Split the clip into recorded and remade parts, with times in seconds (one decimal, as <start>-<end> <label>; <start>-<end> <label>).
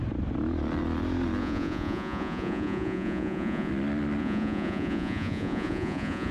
0.0-1.4 recorded; 1.4-3.7 remade; 3.7-4.2 recorded; 4.2-6.3 remade